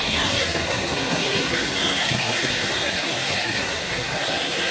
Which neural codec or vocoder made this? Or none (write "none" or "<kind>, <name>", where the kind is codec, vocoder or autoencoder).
codec, SNAC